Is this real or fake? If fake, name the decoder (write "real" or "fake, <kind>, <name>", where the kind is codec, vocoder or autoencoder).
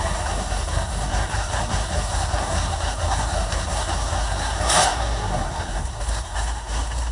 fake, codec, SNAC